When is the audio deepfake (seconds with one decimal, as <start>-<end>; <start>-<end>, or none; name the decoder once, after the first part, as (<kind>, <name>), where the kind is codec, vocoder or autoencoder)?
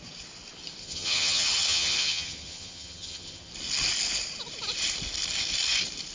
0.8-3.5 (vocoder, HiFi-GAN)